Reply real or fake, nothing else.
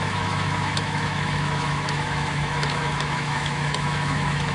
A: fake